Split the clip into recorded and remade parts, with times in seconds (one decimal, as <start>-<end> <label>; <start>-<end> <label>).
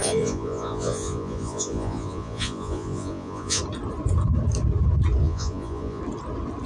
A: 0.0-3.6 remade; 3.6-5.2 recorded; 5.2-6.0 remade; 6.0-6.7 recorded